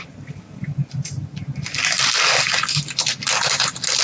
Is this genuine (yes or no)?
yes